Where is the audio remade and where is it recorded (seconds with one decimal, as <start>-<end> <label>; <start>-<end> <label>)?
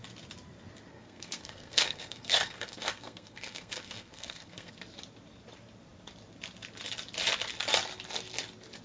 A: 0.0-0.9 recorded; 0.9-4.7 remade; 4.7-8.8 recorded